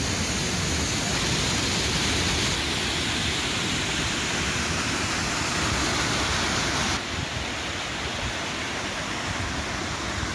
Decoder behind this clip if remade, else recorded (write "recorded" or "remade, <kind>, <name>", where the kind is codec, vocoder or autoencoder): recorded